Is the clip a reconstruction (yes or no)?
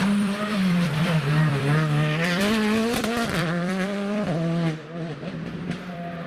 yes